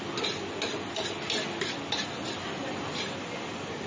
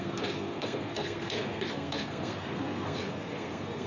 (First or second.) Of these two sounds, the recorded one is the first